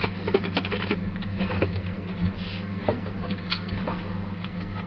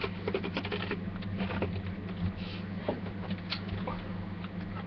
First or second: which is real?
second